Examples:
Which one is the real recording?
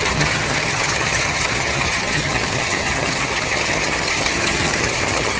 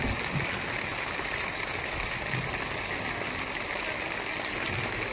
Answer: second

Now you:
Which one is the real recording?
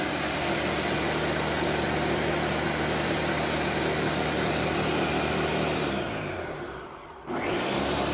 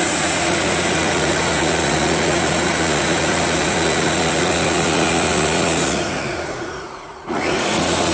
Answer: first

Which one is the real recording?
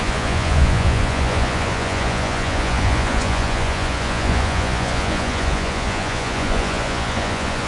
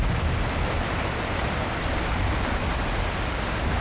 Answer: second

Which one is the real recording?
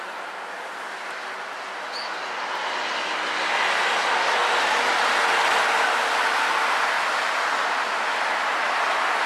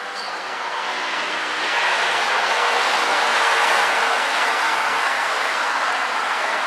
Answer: first